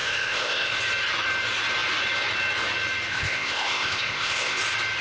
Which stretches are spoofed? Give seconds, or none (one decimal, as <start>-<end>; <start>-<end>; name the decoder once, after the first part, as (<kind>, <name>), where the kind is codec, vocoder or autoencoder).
0.0-0.8 (codec, ZipCodec); 3.1-4.6